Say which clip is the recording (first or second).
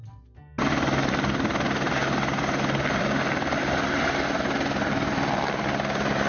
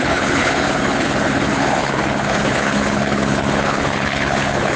first